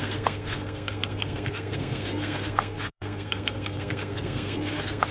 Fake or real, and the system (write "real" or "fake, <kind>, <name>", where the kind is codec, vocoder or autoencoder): fake, codec, SNAC